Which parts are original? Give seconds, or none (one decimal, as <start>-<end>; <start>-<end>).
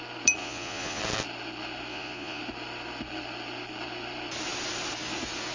0.0-0.4; 1.0-1.9; 2.4-5.5